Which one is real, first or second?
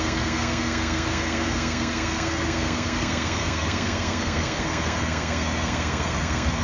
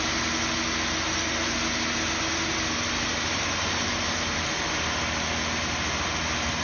second